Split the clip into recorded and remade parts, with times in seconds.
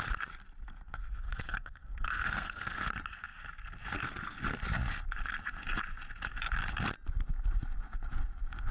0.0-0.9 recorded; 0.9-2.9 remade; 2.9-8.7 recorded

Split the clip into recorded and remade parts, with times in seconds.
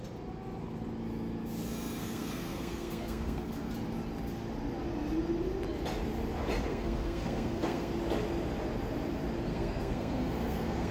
0.0-2.0 recorded; 2.0-3.7 remade; 3.7-6.7 recorded; 6.7-7.9 remade; 7.9-9.5 recorded; 9.5-10.9 remade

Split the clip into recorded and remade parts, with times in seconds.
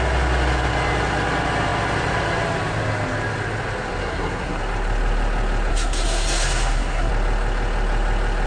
0.0-4.0 recorded; 4.0-4.6 remade; 4.6-5.7 recorded; 5.7-7.1 remade; 7.1-8.5 recorded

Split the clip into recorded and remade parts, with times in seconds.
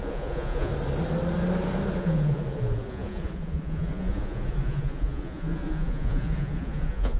0.0-0.7 remade; 0.7-2.0 recorded; 2.0-7.2 remade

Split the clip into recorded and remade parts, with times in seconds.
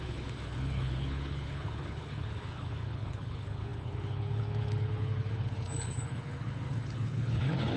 0.0-7.8 remade